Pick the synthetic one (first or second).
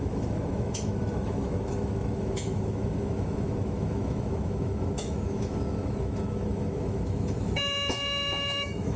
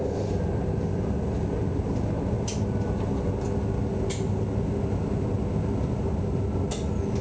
first